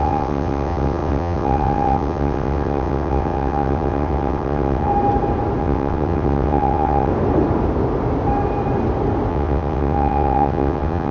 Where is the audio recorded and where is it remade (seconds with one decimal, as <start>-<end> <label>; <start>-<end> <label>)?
0.0-4.9 remade; 4.9-5.6 recorded; 5.6-7.1 remade; 7.1-9.3 recorded; 9.3-11.1 remade